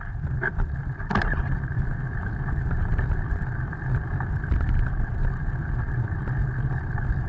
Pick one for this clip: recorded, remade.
recorded